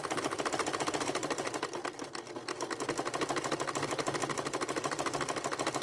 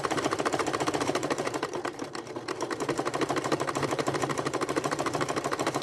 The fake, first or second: second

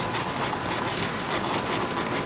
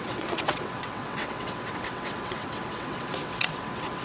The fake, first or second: second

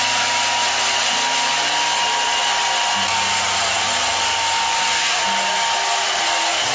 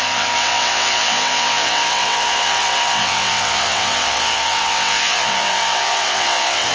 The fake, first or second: second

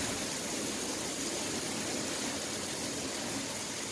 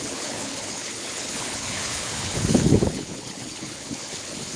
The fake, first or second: second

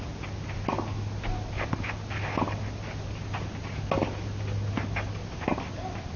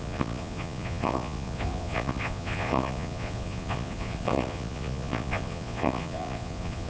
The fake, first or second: second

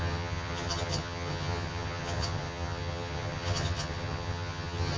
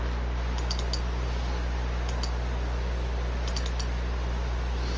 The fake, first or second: first